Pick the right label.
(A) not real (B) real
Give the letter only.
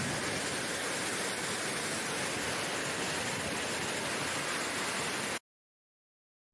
B